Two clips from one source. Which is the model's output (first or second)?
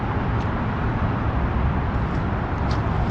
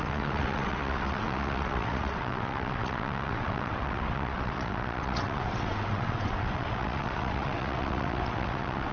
second